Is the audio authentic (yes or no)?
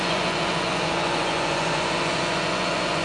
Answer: no